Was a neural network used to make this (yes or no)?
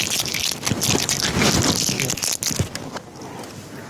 no